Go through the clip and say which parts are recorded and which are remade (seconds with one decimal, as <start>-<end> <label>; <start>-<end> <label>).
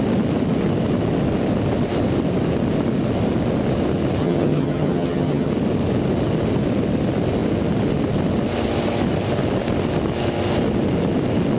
0.0-4.2 recorded; 4.2-5.5 remade; 5.5-11.6 recorded